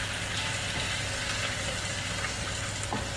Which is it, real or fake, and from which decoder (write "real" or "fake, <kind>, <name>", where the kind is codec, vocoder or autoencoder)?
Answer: real